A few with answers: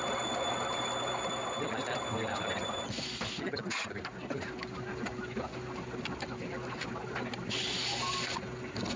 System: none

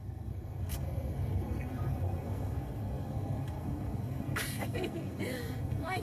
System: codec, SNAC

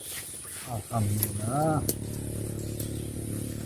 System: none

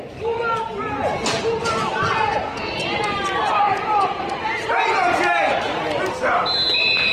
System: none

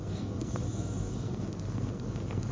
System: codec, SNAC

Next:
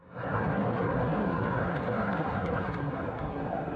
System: codec, SNAC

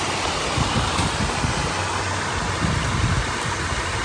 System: none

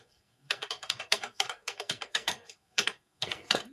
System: codec, SNAC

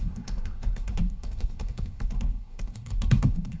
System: codec, SNAC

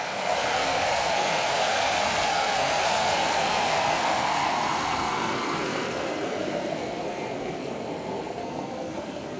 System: codec, SNAC